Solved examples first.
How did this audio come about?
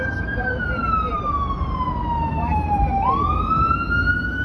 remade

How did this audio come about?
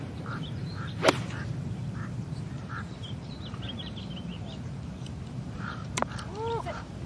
remade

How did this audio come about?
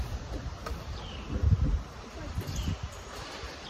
recorded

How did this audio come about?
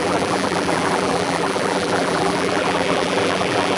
remade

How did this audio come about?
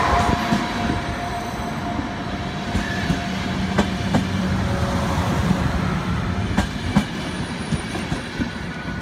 recorded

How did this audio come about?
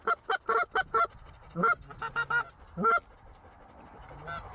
recorded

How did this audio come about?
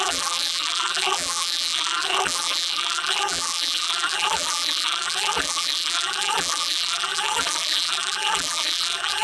remade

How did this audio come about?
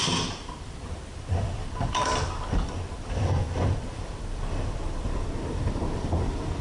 remade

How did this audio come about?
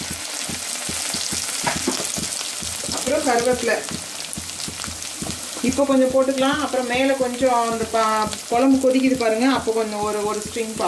recorded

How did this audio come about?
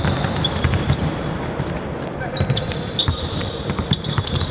remade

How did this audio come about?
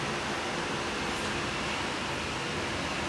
recorded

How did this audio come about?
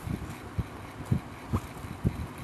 recorded